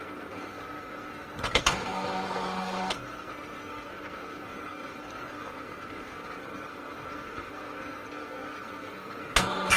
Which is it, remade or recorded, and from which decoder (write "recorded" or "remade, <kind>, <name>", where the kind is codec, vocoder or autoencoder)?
remade, codec, SNAC